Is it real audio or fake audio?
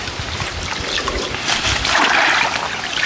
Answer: real